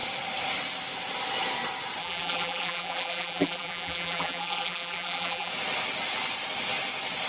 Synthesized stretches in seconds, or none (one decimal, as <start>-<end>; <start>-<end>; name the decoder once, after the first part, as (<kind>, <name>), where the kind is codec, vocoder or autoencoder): 2.0-5.5 (vocoder, BigVGAN v2)